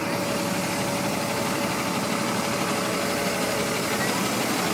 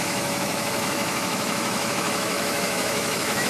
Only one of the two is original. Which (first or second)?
first